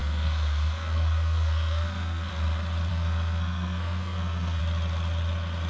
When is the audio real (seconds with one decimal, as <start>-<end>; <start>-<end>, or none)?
2.3-2.9; 4.6-5.7